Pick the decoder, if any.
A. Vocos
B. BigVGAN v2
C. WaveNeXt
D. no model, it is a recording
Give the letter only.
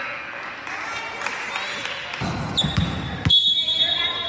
D